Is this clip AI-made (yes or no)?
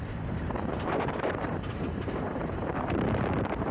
yes